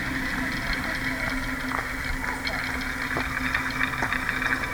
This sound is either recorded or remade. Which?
recorded